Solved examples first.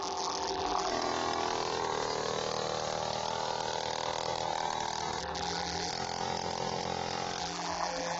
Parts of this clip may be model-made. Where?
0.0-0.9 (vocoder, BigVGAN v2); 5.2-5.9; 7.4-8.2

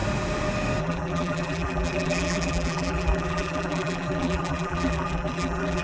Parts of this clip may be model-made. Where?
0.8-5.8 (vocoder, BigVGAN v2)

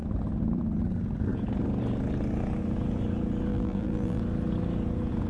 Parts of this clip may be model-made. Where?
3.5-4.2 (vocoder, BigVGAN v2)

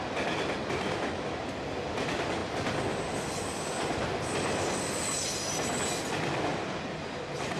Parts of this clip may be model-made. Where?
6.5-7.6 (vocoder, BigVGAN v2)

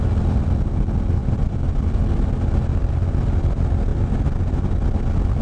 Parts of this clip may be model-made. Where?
1.2-2.0 (vocoder, BigVGAN v2)

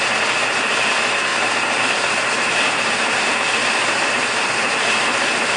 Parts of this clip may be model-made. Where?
1.3-4.7 (vocoder, BigVGAN v2)